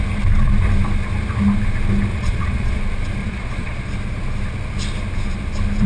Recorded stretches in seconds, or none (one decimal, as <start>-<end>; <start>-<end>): 0.0-2.1; 2.8-3.2; 3.9-5.9

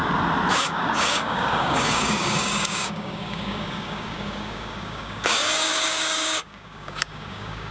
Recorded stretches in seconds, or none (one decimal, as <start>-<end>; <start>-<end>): 0.0-0.5

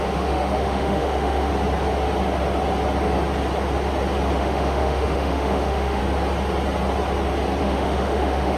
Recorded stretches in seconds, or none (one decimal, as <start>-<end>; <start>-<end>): 1.5-4.4; 6.0-7.6

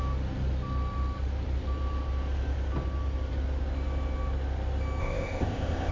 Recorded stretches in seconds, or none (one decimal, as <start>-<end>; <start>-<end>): 0.0-5.0

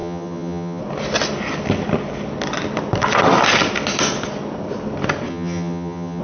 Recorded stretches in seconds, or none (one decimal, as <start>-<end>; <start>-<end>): 0.8-5.3